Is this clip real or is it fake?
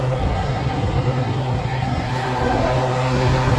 fake